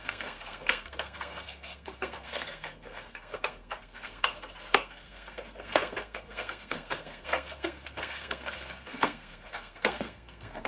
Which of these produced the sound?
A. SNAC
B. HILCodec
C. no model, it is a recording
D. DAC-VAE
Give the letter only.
A